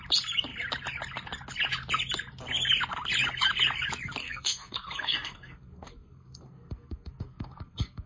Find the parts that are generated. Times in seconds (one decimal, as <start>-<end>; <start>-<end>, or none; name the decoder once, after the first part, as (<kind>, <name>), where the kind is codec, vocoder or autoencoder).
4.2-8.1 (codec, SNAC)